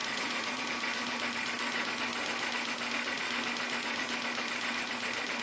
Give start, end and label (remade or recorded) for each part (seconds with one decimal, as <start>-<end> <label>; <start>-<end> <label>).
0.0-0.6 remade; 0.6-5.4 recorded